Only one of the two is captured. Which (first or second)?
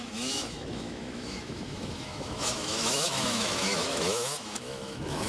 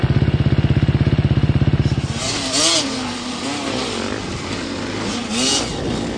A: second